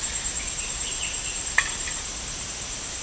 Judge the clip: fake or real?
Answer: real